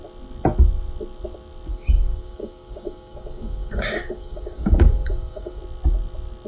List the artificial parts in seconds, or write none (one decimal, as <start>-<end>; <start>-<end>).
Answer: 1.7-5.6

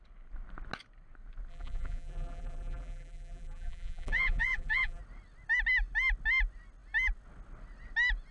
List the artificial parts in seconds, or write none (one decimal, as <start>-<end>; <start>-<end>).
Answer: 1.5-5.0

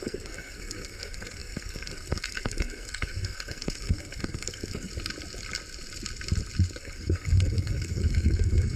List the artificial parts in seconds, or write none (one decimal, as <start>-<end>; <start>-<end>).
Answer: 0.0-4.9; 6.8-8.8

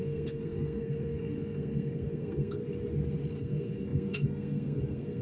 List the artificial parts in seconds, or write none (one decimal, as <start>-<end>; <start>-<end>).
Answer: 0.0-2.6; 3.3-5.2

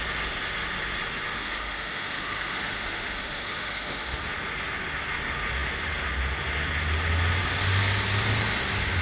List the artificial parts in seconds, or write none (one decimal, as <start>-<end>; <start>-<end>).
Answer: 1.4-4.2

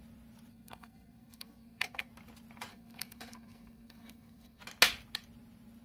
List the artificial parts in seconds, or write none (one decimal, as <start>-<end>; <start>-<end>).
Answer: 0.5-2.1; 2.7-4.6